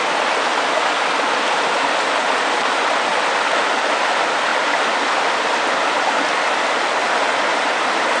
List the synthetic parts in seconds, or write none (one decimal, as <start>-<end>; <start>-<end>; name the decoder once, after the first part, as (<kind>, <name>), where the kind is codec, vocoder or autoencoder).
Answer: none